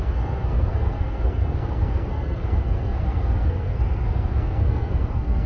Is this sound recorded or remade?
remade